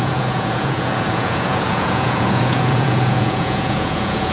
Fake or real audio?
fake